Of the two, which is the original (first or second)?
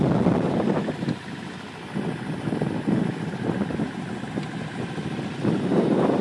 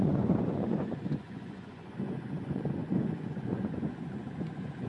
first